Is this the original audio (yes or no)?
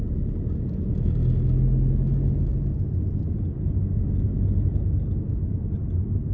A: yes